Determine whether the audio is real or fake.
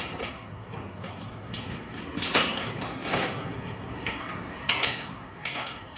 fake